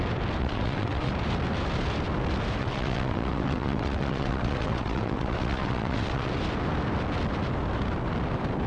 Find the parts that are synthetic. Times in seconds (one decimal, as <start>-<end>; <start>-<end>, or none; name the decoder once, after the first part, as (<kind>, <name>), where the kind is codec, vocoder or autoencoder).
0.4-1.1 (vocoder, WaveNeXt); 2.6-6.3